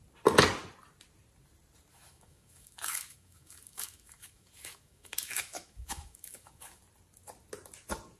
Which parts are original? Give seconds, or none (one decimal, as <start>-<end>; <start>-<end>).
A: 0.0-1.9; 6.8-8.2